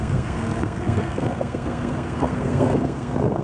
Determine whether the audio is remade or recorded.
remade